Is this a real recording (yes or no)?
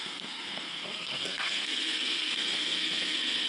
no